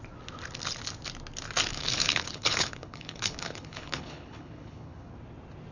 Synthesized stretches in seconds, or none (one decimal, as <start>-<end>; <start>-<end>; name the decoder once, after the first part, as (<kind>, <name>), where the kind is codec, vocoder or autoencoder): 1.7-5.1 (codec, HILCodec)